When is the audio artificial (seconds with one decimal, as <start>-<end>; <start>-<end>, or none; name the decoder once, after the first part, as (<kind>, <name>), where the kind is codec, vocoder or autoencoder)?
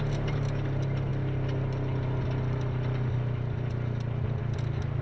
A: none